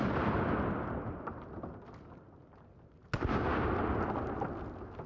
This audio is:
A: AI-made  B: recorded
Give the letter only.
B